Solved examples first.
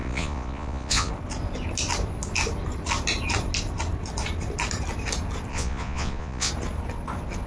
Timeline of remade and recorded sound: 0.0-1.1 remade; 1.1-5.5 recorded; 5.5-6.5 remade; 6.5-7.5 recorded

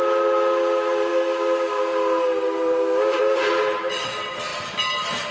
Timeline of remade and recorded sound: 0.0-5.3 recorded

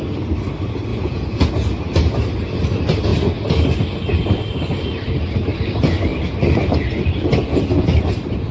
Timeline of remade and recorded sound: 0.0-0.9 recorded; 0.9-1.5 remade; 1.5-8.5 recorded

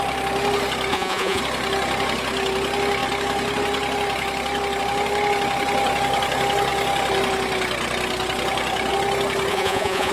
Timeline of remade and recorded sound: 0.0-0.9 recorded; 0.9-1.4 remade; 1.4-9.5 recorded; 9.5-10.1 remade